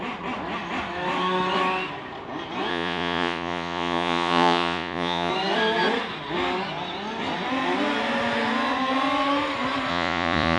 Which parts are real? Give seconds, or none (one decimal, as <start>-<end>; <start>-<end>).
0.0-2.7; 5.3-9.9